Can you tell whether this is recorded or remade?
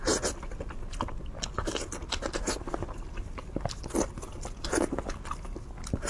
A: recorded